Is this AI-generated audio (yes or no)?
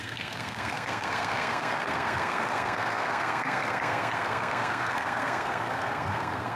yes